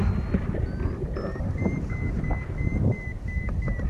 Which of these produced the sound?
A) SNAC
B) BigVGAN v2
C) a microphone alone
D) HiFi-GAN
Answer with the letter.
C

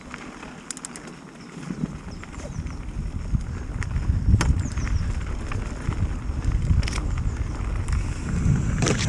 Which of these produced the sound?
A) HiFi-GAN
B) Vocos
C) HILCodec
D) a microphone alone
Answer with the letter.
D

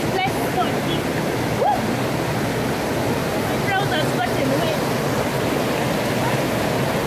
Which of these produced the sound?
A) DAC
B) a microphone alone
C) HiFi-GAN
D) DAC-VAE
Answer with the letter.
B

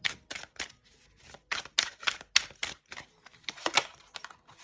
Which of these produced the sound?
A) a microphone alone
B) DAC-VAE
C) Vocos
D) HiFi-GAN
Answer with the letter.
A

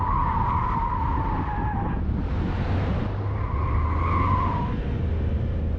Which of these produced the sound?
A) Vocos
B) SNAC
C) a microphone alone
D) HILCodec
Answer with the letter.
C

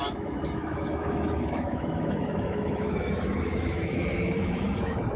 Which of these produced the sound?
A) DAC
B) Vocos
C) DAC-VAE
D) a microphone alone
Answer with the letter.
C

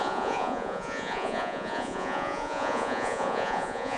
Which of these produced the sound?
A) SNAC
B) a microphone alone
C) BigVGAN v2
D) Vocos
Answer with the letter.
D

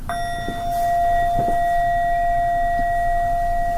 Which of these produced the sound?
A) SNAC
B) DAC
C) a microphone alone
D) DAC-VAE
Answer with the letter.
C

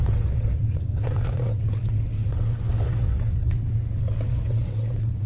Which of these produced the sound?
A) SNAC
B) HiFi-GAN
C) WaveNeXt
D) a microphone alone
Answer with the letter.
C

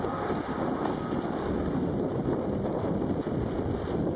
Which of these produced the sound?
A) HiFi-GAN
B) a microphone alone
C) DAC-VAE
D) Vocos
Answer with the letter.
B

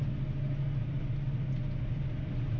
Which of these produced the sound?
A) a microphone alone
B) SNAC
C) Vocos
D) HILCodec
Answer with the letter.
A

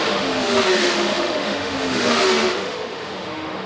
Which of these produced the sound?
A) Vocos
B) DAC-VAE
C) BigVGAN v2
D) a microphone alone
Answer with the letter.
B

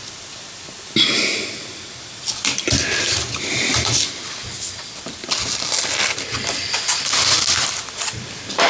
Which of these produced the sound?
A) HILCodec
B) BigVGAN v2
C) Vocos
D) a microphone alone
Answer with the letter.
D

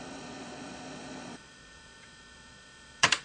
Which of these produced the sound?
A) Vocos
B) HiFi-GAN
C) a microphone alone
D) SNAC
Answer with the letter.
A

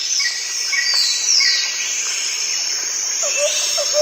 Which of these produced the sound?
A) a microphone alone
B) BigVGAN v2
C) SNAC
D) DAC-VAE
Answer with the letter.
A